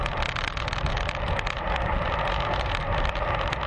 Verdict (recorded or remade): recorded